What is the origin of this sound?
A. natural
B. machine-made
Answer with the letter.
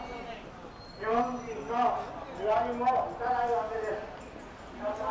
A